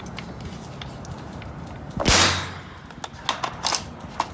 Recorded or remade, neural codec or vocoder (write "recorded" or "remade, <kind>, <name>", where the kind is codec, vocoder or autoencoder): recorded